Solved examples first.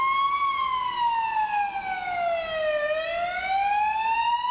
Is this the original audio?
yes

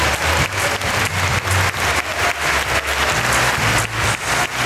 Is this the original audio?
yes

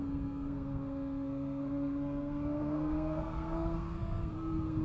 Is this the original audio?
no